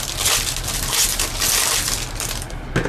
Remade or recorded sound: recorded